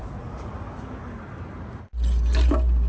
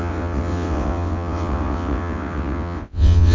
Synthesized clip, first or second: second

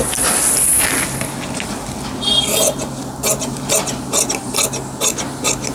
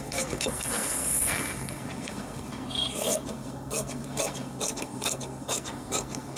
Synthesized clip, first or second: second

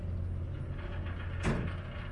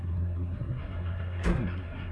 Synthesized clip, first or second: second